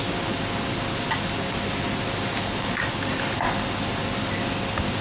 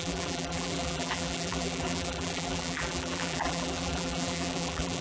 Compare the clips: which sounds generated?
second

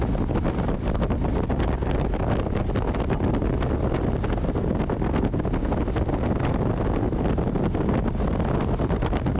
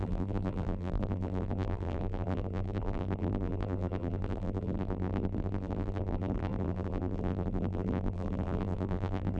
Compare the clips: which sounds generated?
second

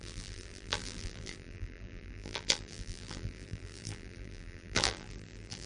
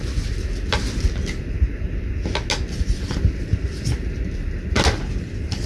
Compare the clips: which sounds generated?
first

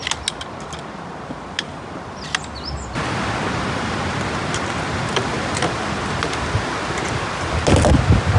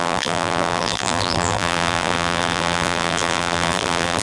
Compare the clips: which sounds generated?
second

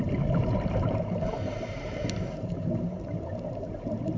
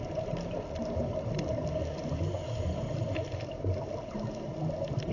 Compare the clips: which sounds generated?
first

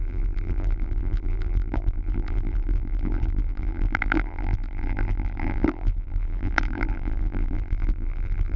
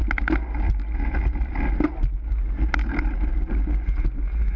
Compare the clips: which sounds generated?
first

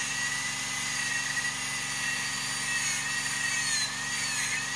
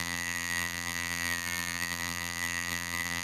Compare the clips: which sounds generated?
second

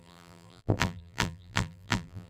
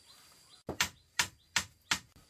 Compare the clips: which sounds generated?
first